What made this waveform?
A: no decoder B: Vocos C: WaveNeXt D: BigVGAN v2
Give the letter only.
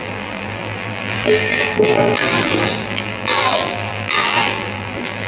D